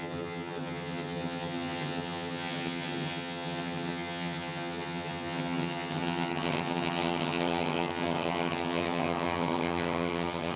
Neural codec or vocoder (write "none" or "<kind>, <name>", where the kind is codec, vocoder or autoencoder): vocoder, HiFi-GAN